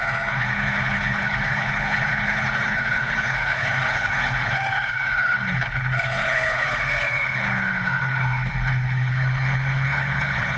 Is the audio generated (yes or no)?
yes